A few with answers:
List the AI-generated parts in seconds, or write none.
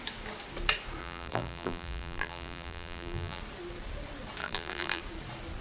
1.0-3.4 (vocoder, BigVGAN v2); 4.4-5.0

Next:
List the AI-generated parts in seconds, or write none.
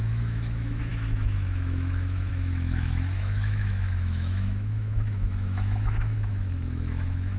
0.0-7.4 (autoencoder, DAC-VAE)